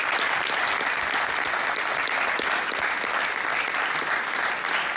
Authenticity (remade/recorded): recorded